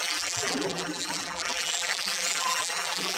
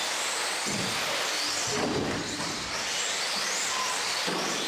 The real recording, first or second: second